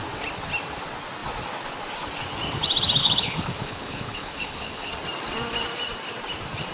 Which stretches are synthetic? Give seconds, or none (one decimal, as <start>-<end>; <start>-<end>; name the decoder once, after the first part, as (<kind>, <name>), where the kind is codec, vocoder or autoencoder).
3.0-4.9 (codec, HILCodec)